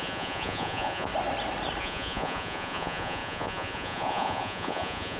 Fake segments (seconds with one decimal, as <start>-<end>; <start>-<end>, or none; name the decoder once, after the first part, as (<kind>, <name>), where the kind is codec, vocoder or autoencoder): 0.0-1.1 (vocoder, Vocos); 1.8-5.2